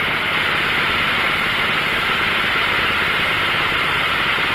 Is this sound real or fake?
real